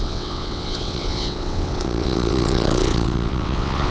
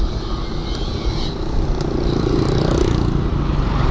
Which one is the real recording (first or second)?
second